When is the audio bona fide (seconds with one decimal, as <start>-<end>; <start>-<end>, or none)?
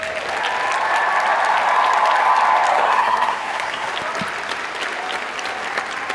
0.0-2.7; 3.9-6.1